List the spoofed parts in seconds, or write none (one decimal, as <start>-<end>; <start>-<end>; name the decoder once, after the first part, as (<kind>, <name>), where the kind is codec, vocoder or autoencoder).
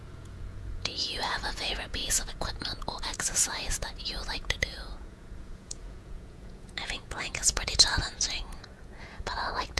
0.0-9.8 (vocoder, Vocos)